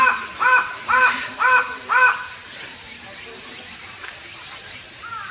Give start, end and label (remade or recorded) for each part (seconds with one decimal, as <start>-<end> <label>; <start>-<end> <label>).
0.0-1.3 remade; 1.3-3.8 recorded; 3.8-5.3 remade

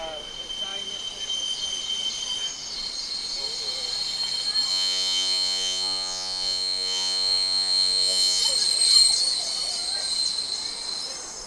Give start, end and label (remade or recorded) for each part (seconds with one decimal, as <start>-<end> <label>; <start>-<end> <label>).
0.0-4.7 recorded; 4.7-8.4 remade; 8.4-11.5 recorded

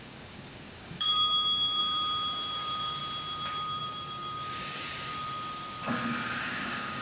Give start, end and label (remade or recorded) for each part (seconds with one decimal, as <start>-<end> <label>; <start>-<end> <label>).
0.0-1.8 remade; 1.8-2.5 recorded; 2.5-3.0 remade; 3.0-3.8 recorded; 3.8-5.1 remade; 5.1-6.4 recorded; 6.4-7.0 remade

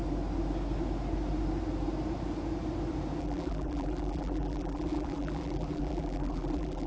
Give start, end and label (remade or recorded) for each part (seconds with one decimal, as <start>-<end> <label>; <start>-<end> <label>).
0.0-3.2 recorded; 3.2-6.9 remade

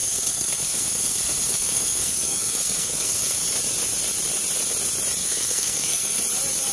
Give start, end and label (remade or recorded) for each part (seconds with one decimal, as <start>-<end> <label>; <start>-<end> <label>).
0.0-3.4 remade; 3.4-5.2 recorded; 5.2-6.2 remade; 6.2-6.7 recorded

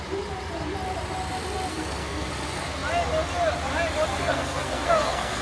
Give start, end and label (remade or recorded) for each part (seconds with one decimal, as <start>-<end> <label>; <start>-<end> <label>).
0.0-1.7 recorded; 1.7-2.3 remade; 2.3-4.1 recorded; 4.1-5.4 remade